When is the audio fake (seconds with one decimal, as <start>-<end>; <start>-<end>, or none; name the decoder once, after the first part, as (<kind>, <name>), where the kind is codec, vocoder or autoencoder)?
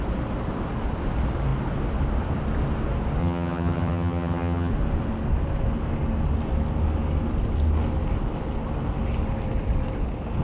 3.2-4.7 (vocoder, HiFi-GAN)